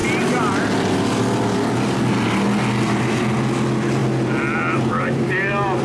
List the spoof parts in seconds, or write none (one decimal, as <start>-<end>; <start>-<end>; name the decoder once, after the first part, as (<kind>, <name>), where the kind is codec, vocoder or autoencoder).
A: none